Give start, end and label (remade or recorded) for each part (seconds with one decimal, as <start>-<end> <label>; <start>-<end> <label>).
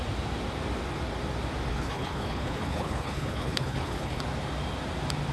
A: 0.0-1.7 recorded; 1.7-4.2 remade; 4.2-5.3 recorded